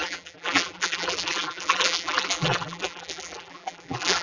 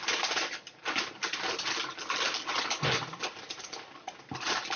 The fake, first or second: first